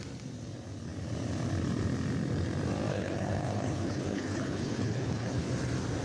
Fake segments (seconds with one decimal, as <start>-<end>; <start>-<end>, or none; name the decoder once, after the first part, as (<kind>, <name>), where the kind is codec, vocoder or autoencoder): 2.9-5.5 (codec, HILCodec)

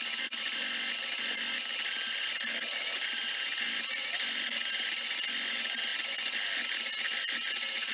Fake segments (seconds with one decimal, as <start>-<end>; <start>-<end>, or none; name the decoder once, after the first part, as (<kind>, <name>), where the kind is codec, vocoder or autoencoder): none

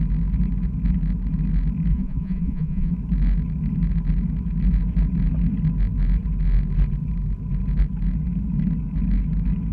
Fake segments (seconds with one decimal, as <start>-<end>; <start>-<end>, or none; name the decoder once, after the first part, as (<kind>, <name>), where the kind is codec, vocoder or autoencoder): 1.9-2.9 (vocoder, Vocos)

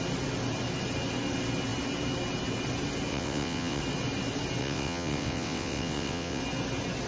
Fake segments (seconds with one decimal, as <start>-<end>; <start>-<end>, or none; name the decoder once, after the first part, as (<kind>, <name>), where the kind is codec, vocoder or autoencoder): 3.1-3.8 (vocoder, WaveNeXt); 4.6-6.4

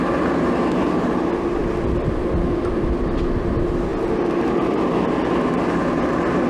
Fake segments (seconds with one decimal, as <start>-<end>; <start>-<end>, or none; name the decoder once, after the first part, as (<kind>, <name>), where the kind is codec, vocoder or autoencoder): 1.6-3.5 (vocoder, BigVGAN v2)

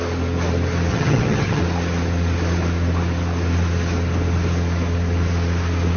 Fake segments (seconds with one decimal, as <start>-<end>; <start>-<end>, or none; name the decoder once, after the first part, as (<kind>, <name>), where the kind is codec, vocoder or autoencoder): 0.9-1.6 (vocoder, HiFi-GAN)